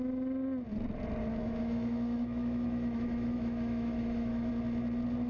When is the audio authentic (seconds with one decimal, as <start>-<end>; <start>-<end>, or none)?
0.0-1.3; 4.5-5.3